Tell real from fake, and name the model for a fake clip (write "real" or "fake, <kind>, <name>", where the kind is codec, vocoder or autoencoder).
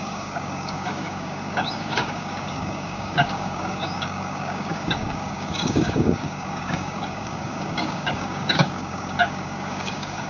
fake, codec, DAC